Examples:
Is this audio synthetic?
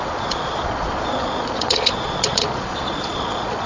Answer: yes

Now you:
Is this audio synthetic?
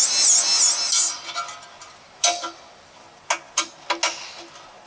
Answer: no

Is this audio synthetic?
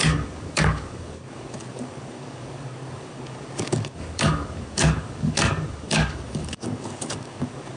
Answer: yes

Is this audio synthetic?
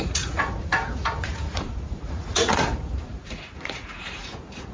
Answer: yes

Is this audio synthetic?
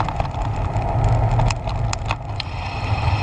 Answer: no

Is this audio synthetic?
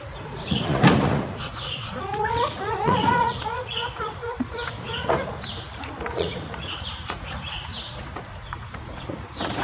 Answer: yes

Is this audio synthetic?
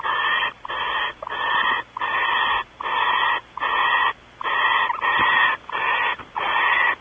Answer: no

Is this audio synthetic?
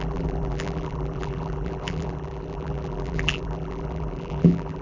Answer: yes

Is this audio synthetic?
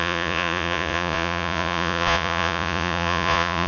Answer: yes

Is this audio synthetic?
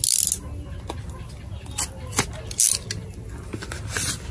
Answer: no